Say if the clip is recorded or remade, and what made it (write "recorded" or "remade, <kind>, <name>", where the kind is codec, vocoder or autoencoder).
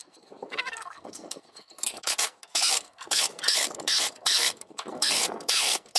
remade, codec, SNAC